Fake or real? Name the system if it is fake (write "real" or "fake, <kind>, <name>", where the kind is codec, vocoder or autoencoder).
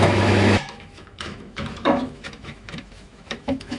fake, autoencoder, DAC-VAE